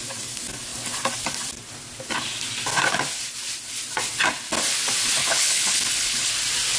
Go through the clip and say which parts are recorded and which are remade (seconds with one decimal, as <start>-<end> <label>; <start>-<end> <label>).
0.0-5.2 recorded; 5.2-6.3 remade; 6.3-6.8 recorded